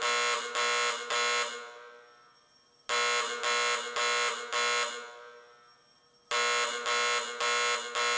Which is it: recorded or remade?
recorded